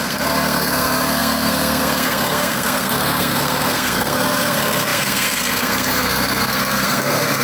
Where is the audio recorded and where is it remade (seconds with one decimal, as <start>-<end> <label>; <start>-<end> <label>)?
0.0-7.4 remade